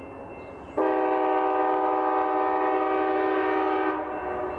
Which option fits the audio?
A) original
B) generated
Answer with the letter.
A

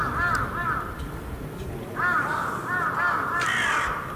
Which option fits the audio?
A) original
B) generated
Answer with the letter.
A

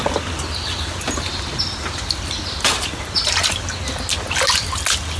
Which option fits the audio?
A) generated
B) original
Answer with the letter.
B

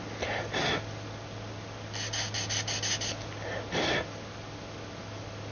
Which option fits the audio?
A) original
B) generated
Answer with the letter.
A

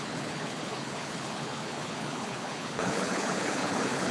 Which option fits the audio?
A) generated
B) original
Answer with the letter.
A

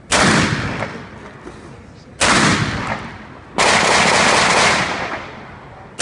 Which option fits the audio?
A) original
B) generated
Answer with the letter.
A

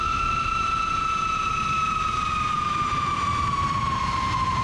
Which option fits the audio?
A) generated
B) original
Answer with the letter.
A